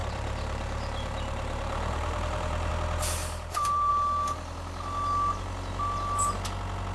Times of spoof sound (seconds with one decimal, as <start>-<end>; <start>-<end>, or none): 0.0-2.7; 3.2-3.9